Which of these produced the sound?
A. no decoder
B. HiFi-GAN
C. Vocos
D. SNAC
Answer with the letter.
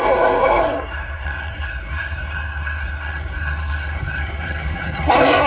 D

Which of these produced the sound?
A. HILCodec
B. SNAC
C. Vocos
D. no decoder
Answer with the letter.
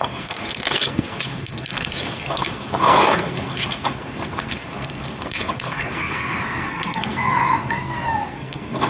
B